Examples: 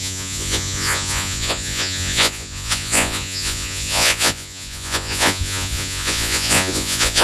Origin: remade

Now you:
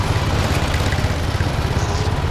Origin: recorded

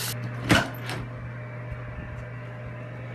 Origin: recorded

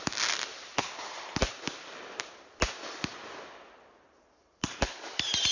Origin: recorded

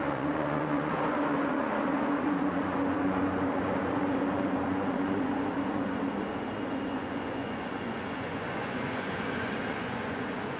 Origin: remade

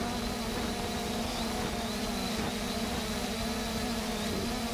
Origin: recorded